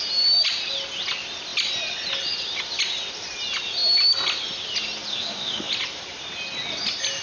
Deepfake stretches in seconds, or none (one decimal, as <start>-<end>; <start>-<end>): 5.1-5.7